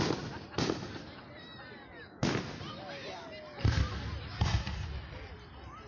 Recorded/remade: recorded